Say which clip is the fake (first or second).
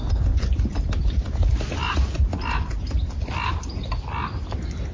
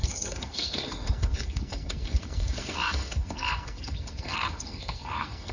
second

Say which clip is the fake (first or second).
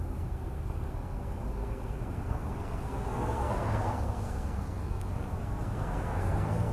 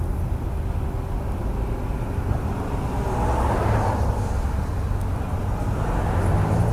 first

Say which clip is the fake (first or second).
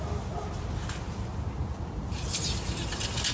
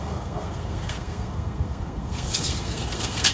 second